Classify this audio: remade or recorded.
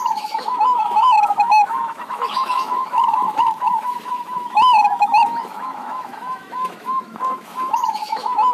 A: remade